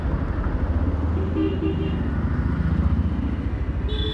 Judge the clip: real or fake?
real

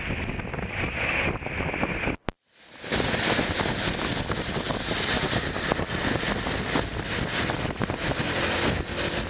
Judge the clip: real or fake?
real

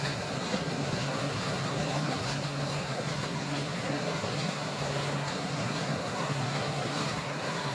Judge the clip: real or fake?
fake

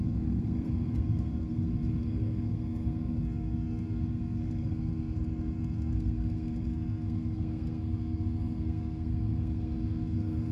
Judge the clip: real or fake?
fake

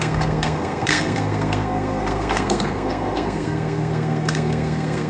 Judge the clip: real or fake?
fake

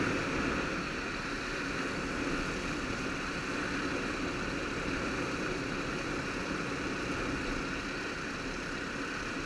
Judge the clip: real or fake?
real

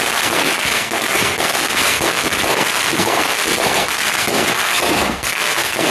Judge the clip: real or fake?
fake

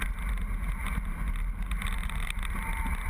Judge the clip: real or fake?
real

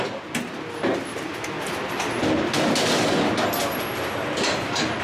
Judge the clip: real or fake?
real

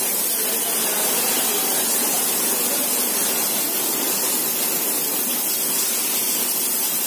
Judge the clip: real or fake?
real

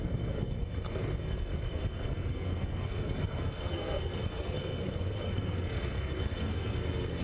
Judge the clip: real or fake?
fake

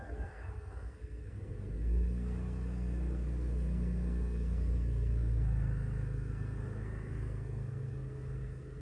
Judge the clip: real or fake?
fake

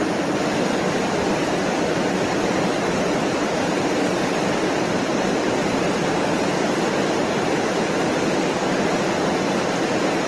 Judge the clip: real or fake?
real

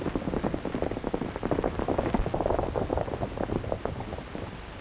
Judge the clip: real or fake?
real